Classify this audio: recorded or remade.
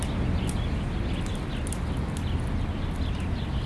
recorded